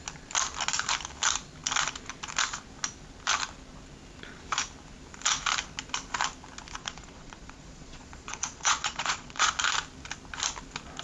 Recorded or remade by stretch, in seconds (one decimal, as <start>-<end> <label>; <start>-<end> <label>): 0.0-6.8 recorded; 6.8-9.5 remade; 9.5-11.0 recorded